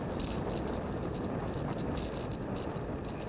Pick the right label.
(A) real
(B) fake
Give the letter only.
A